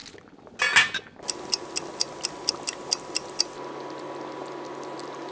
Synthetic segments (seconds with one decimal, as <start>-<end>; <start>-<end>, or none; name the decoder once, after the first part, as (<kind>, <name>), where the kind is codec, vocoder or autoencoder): none